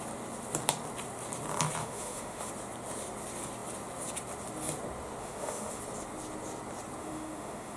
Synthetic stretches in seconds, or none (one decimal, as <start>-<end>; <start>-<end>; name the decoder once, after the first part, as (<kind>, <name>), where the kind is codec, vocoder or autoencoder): 1.8-2.5 (autoencoder, DAC-VAE); 5.2-5.8; 7.0-7.8

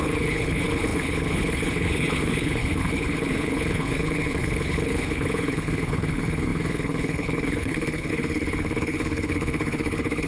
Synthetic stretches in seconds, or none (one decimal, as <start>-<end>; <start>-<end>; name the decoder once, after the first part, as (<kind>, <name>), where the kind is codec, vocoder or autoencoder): 0.0-10.3 (codec, HILCodec)

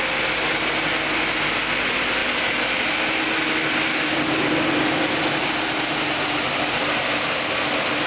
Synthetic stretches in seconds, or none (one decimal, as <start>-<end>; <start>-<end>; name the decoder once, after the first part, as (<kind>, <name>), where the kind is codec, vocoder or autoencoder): none

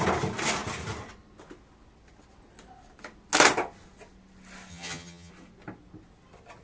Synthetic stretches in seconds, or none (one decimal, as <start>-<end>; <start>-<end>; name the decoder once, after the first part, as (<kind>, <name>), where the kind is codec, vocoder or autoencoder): 4.7-5.3 (vocoder, HiFi-GAN)

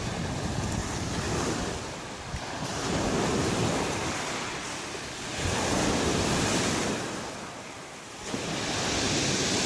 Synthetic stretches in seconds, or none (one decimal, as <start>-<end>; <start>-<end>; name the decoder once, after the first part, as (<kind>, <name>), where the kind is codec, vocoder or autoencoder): 2.7-5.0 (vocoder, BigVGAN v2)

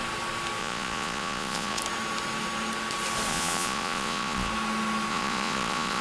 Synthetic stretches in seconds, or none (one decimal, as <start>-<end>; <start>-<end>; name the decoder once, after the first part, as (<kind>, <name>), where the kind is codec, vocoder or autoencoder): 0.6-1.8 (vocoder, Vocos); 3.3-4.5; 5.1-6.0

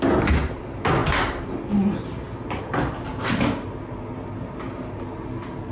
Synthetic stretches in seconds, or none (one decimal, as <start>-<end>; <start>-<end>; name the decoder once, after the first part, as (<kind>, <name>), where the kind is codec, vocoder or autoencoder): none